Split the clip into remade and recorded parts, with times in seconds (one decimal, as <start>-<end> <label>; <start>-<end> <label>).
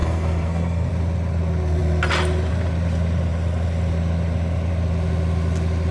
0.0-0.9 remade; 0.9-5.9 recorded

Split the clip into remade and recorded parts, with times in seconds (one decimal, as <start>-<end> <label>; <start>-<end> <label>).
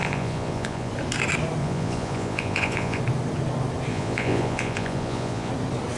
0.0-0.9 remade; 0.9-1.6 recorded; 1.6-3.0 remade; 3.0-3.9 recorded; 3.9-5.5 remade; 5.5-6.0 recorded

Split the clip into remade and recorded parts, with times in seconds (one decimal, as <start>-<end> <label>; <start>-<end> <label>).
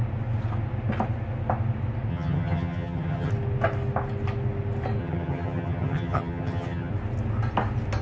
0.0-2.1 recorded; 2.1-3.3 remade; 3.3-5.0 recorded; 5.0-6.9 remade; 6.9-8.0 recorded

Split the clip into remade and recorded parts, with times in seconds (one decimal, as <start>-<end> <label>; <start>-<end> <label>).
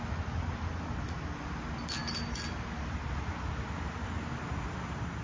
0.0-5.2 recorded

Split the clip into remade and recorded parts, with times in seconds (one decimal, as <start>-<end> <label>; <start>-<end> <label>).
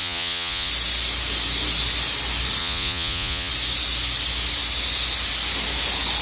0.0-0.7 remade; 0.7-2.6 recorded; 2.6-3.5 remade; 3.5-6.2 recorded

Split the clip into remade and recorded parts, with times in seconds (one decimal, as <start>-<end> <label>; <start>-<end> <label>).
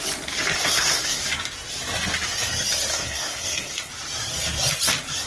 0.0-0.6 recorded; 0.6-1.2 remade; 1.2-2.9 recorded; 2.9-3.9 remade; 3.9-5.3 recorded